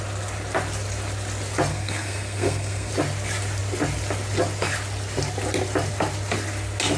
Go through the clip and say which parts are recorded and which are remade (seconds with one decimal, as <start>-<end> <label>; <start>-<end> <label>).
0.0-1.7 recorded; 1.7-2.9 remade; 2.9-7.0 recorded